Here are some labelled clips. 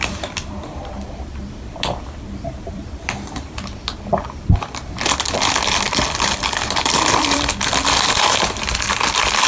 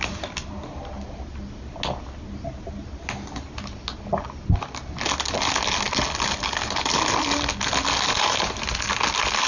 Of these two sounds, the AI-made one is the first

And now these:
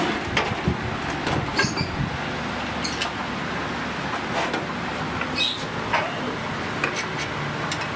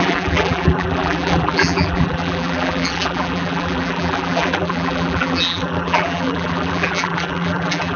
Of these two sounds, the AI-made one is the second